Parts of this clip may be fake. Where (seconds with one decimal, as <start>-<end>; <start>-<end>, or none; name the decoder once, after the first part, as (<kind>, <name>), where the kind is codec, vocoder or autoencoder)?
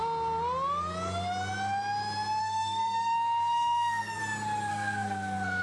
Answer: 2.4-4.2 (codec, SNAC); 4.7-5.6